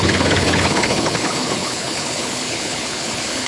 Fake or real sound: fake